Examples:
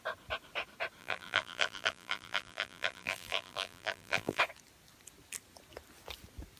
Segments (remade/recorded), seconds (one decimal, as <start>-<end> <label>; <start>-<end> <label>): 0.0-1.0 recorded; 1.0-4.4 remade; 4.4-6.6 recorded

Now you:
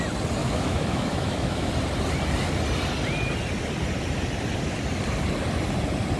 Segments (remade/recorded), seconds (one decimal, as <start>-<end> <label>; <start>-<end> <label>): 0.0-0.4 recorded; 0.4-1.7 remade; 1.7-6.2 recorded

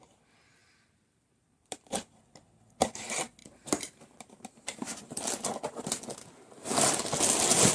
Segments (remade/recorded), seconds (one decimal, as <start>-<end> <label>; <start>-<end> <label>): 0.0-0.6 recorded; 0.6-2.1 remade; 2.1-3.4 recorded; 3.4-5.8 remade; 5.8-7.7 recorded

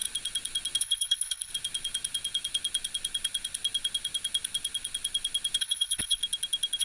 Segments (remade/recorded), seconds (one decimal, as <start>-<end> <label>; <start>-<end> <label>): 0.0-0.8 recorded; 0.8-1.5 remade; 1.5-5.6 recorded; 5.6-6.2 remade; 6.2-6.8 recorded

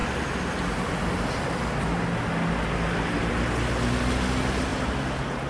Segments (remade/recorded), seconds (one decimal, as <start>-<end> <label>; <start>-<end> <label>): 0.0-5.5 recorded

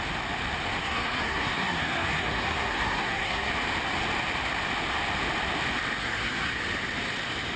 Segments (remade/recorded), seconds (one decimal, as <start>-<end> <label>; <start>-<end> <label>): 0.0-0.8 recorded; 0.8-3.5 remade; 3.5-6.0 recorded; 6.0-6.6 remade; 6.6-7.6 recorded

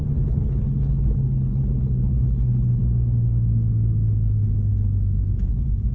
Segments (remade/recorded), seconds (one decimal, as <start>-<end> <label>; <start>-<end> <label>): 0.0-2.8 remade; 2.8-5.5 recorded; 5.5-5.9 remade

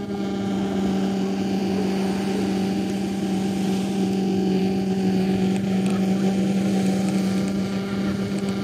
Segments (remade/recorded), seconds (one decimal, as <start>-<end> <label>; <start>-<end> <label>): 0.0-8.6 recorded